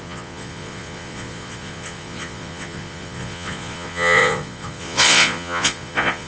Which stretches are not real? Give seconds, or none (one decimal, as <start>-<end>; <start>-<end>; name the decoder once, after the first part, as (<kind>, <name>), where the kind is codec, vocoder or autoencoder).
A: 0.0-6.3 (vocoder, Vocos)